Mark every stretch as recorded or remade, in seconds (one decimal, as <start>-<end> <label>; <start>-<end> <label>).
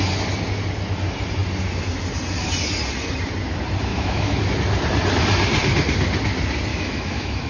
0.0-3.9 recorded; 3.9-4.4 remade; 4.4-6.7 recorded; 6.7-7.5 remade